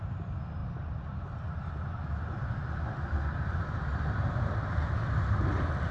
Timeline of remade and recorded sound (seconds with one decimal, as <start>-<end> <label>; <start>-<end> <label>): 0.0-0.6 recorded; 0.6-1.7 remade; 1.7-5.9 recorded